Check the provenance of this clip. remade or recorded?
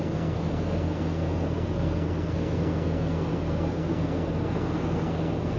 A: remade